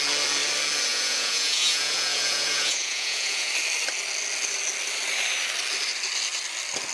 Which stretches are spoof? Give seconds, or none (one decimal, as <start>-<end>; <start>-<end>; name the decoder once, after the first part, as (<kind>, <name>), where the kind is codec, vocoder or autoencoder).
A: 0.9-3.5 (vocoder, Vocos)